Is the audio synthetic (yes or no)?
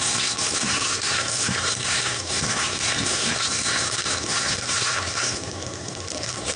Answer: yes